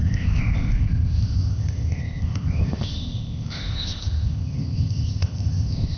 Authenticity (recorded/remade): remade